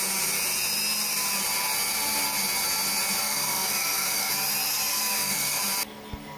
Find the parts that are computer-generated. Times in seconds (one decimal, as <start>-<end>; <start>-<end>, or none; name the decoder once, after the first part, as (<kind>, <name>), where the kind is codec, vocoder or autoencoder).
3.2-4.3 (codec, SNAC); 4.9-5.6